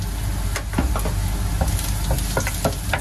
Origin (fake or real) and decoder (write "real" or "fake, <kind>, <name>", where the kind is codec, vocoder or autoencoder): real